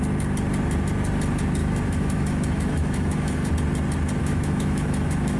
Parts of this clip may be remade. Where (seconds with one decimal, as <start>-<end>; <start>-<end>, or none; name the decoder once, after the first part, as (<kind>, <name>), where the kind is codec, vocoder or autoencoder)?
1.6-3.5 (autoencoder, DAC-VAE); 4.2-5.4

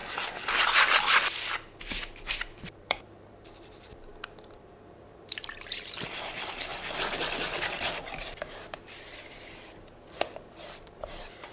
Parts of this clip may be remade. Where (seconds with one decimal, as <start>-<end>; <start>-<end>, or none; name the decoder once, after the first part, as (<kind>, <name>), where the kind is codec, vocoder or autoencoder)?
2.3-4.1 (vocoder, BigVGAN v2); 4.6-6.7; 10.8-11.5

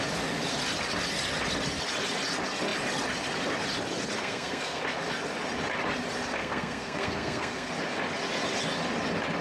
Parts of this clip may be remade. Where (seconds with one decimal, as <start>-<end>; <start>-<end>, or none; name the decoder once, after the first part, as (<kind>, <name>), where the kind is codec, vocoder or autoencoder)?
4.2-4.8 (codec, SNAC); 6.4-7.7

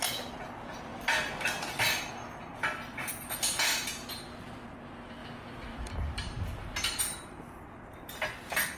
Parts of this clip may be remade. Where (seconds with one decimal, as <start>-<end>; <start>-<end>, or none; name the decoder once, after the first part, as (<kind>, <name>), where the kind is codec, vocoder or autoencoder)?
0.9-3.1 (vocoder, BigVGAN v2); 5.2-7.0